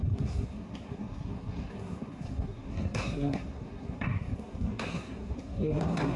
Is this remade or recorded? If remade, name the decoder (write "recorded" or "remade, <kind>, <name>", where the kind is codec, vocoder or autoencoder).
remade, codec, SNAC